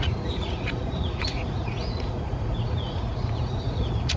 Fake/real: fake